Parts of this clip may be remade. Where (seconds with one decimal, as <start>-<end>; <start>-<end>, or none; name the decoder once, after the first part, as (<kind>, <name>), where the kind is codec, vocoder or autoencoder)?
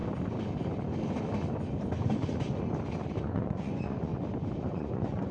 3.2-4.1 (vocoder, Vocos); 4.6-5.3